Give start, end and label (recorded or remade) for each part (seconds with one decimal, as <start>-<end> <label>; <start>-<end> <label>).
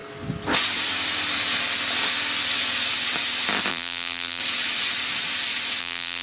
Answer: 0.0-3.7 recorded; 3.7-4.4 remade; 4.4-5.8 recorded; 5.8-6.2 remade